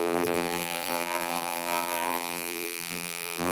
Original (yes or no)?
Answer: no